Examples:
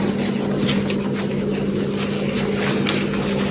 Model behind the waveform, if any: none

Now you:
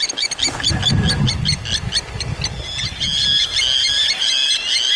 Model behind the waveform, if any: none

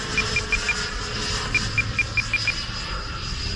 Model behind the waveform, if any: none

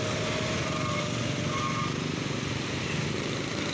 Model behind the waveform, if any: none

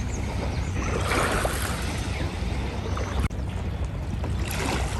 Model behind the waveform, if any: none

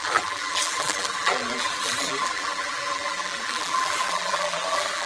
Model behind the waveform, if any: vocoder, BigVGAN v2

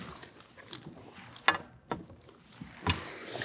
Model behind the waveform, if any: none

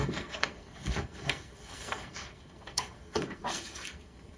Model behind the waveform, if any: codec, SNAC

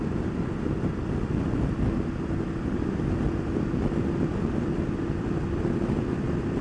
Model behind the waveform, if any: none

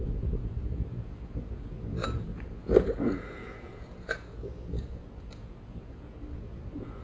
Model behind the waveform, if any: vocoder, Vocos